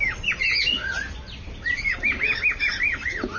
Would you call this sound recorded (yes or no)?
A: yes